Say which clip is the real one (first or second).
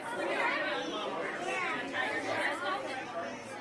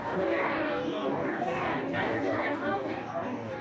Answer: first